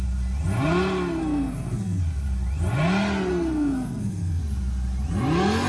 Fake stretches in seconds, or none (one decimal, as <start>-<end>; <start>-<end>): 1.2-2.0; 3.3-4.4